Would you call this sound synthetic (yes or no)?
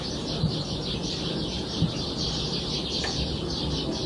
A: no